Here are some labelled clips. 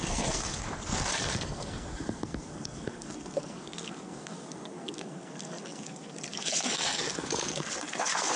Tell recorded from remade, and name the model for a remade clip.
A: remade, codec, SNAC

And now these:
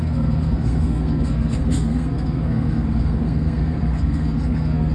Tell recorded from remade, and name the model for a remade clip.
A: remade, codec, SNAC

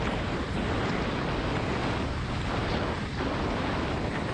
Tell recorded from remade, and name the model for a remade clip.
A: recorded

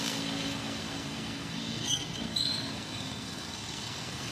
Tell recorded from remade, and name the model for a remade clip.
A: remade, codec, SNAC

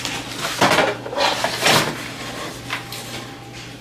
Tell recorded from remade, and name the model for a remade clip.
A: recorded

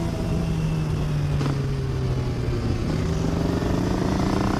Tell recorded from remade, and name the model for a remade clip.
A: recorded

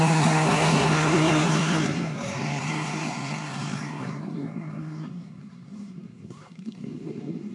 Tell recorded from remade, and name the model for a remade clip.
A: remade, codec, SNAC